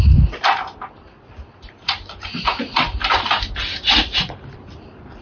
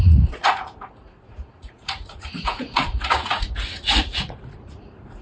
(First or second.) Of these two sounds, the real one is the first